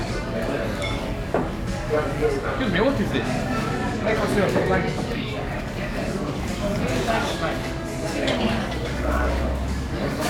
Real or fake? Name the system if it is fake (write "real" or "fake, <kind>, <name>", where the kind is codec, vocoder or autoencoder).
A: fake, codec, DAC